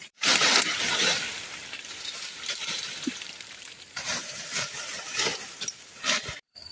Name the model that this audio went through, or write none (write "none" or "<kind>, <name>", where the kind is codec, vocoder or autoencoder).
vocoder, BigVGAN v2